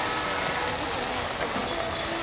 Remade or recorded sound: recorded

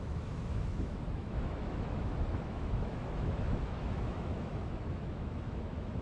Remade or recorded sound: remade